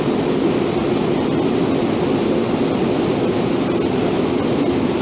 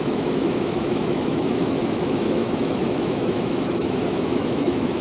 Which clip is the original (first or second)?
first